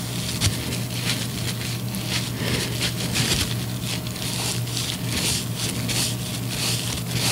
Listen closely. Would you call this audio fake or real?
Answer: real